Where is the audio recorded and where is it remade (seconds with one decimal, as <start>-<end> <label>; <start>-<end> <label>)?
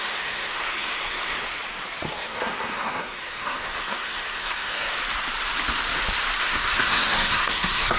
0.0-1.4 remade; 1.4-2.0 recorded; 2.0-5.0 remade; 5.0-6.4 recorded; 6.4-8.0 remade